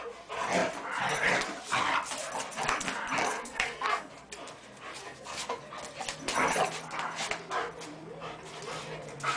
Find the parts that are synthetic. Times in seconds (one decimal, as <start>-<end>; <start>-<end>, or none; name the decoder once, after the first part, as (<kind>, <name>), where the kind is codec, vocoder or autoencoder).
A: 3.2-4.1 (codec, SNAC); 5.0-5.6